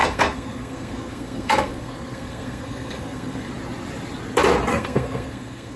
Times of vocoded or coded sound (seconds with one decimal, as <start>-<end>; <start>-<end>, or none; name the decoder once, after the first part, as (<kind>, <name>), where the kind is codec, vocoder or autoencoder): 0.0-3.5 (codec, SNAC); 4.7-5.8